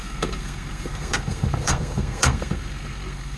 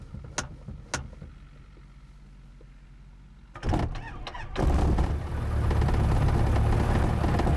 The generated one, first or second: first